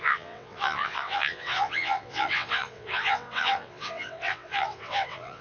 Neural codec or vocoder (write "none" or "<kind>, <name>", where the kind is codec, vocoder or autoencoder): vocoder, WaveNeXt